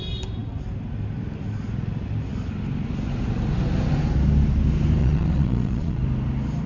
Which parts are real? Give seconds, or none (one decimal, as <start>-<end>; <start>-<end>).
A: 0.0-5.0; 6.0-6.7

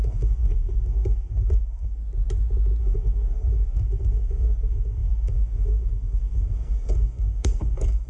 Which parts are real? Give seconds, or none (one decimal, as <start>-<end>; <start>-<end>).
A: 2.0-2.8

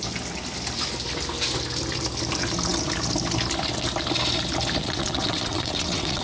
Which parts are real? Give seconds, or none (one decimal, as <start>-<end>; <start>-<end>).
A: 0.0-4.8

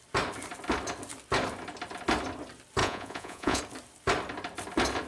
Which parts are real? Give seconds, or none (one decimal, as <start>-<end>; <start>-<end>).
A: 0.0-2.8; 3.6-5.1

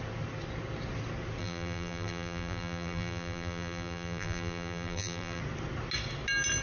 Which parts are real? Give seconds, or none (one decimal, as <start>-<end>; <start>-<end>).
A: 0.0-1.4; 5.4-6.6

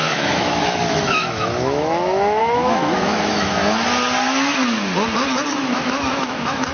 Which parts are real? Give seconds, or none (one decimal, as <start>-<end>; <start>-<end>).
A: 3.6-5.5

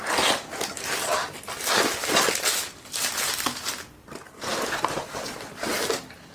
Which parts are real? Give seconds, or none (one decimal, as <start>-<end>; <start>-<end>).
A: 0.0-2.5; 3.1-4.0; 4.8-6.3

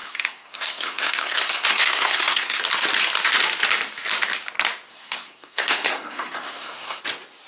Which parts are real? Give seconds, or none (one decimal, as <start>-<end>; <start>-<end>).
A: 2.6-4.9; 7.0-7.5